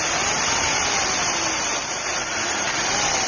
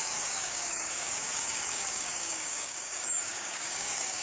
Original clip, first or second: first